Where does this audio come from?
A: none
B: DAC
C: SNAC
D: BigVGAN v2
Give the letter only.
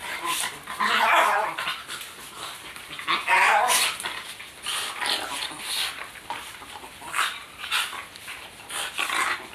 A